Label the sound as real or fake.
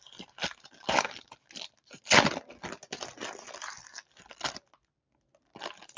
real